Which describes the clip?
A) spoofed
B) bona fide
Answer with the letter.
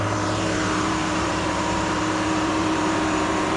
A